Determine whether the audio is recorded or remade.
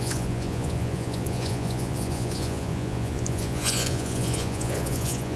remade